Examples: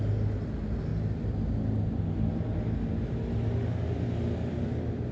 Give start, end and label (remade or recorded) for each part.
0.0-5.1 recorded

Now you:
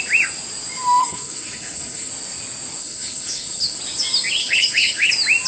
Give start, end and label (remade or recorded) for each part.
0.0-1.0 recorded; 1.0-2.1 remade; 2.1-2.8 recorded; 2.8-3.8 remade; 3.8-4.4 recorded; 4.4-5.1 remade; 5.1-5.5 recorded